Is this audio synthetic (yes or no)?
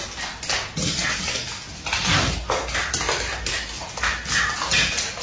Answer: no